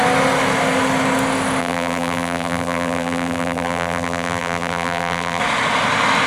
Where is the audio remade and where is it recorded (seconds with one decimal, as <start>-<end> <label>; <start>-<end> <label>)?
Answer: 0.0-1.6 recorded; 1.6-5.4 remade; 5.4-6.3 recorded